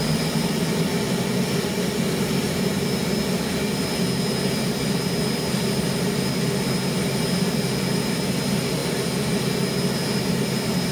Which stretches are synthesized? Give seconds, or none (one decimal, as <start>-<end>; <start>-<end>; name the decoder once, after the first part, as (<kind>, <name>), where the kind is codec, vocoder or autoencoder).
none